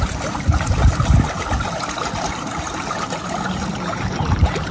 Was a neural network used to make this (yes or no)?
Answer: yes